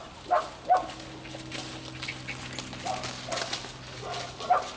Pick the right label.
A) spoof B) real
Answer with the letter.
B